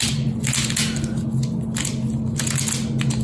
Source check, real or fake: real